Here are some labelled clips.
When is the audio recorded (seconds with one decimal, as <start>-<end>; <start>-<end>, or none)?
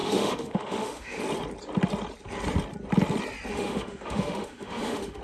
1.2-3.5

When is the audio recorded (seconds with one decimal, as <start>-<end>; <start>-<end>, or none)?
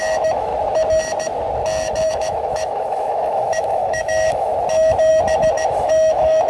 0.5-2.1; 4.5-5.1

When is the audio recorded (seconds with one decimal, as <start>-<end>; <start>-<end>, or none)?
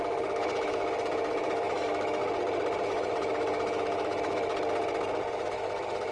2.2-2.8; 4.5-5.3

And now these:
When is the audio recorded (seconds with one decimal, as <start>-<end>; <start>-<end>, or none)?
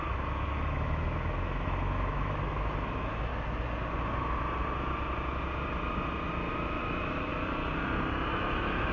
3.3-6.5; 7.3-8.3